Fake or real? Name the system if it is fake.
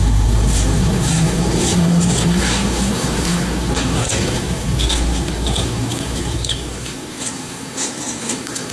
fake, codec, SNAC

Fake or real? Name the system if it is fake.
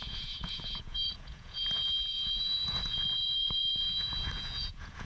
fake, vocoder, Vocos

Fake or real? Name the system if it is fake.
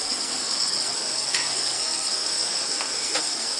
fake, codec, SNAC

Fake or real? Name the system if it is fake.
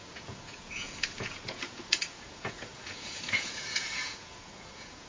fake, vocoder, Vocos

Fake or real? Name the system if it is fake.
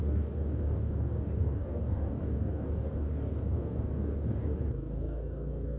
fake, codec, DAC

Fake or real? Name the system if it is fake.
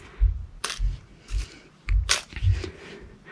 real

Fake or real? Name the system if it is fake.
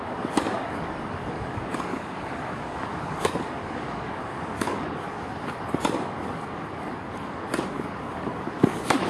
fake, codec, DAC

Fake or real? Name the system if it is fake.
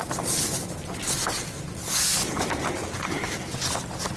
real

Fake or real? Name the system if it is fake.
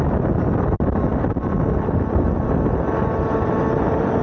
real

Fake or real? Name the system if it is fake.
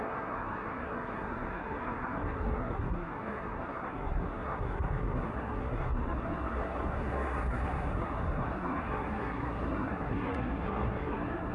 fake, codec, SNAC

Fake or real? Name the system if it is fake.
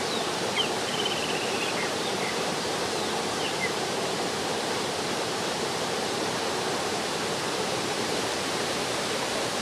fake, vocoder, BigVGAN v2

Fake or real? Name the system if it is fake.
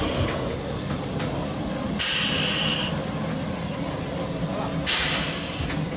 real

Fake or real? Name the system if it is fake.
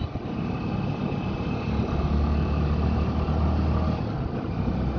real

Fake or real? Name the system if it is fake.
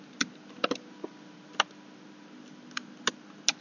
real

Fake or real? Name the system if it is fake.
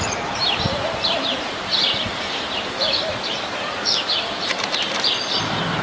fake, vocoder, BigVGAN v2